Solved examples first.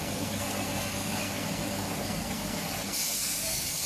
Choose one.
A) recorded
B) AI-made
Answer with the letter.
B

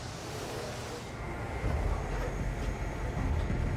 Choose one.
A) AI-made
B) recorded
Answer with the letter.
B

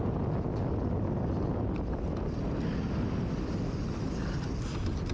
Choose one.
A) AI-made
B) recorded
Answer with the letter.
B